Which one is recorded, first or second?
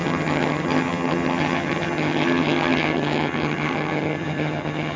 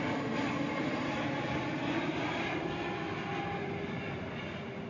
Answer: second